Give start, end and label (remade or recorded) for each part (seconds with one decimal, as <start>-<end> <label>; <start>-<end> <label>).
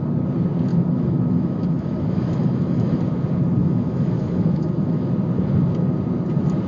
0.0-0.7 recorded; 0.7-3.0 remade; 3.0-3.6 recorded; 3.6-5.1 remade; 5.1-6.7 recorded